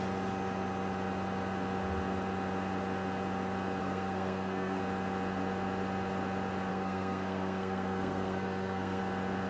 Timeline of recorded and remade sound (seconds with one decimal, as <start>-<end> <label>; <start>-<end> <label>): 0.0-3.8 recorded; 3.8-4.8 remade; 4.8-6.7 recorded; 6.7-9.0 remade; 9.0-9.5 recorded